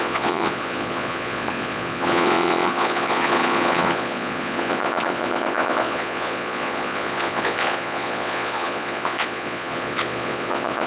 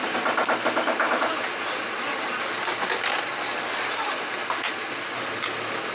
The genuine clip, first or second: second